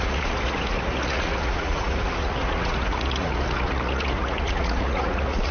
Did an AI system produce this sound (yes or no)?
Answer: yes